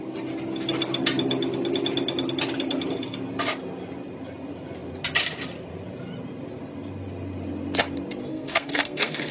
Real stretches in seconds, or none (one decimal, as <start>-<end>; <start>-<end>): 0.0-8.3